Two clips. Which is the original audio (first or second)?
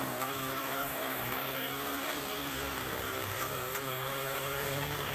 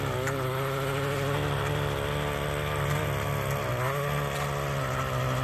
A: second